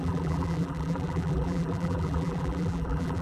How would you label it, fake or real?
fake